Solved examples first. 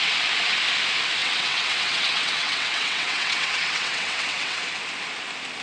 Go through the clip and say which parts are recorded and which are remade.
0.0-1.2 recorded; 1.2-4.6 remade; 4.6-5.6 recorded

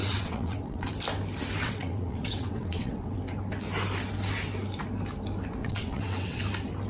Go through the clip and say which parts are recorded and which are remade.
0.0-0.9 remade; 0.9-1.6 recorded; 1.6-3.2 remade; 3.2-5.6 recorded; 5.6-6.4 remade; 6.4-6.9 recorded

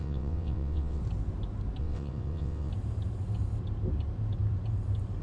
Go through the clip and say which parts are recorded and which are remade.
0.0-1.0 remade; 1.0-1.8 recorded; 1.8-2.7 remade; 2.7-5.2 recorded

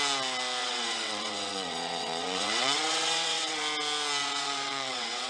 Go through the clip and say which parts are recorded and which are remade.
0.0-0.6 recorded; 0.6-3.6 remade; 3.6-4.2 recorded; 4.2-5.3 remade